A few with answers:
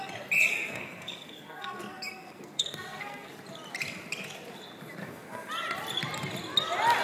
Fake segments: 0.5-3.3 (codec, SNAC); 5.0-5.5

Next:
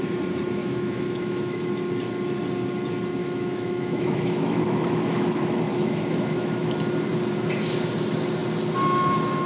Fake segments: 0.6-1.7 (autoencoder, DAC-VAE); 3.2-6.7

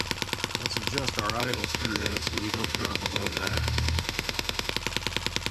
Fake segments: 1.4-4.7 (autoencoder, DAC-VAE)

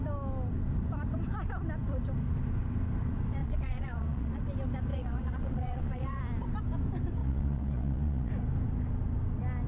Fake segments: 3.4-4.4 (vocoder, Vocos); 4.9-6.2; 7.2-8.3

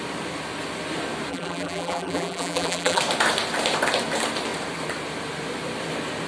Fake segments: 1.3-3.0 (vocoder, BigVGAN v2)

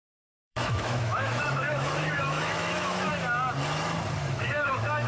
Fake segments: 0.0-3.1 (autoencoder, DAC-VAE); 4.3-5.1